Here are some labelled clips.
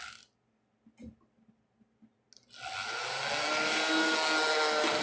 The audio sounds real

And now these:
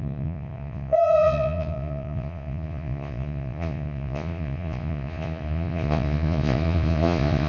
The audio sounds fake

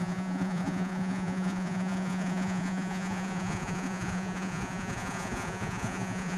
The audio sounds fake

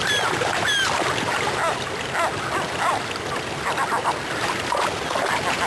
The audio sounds real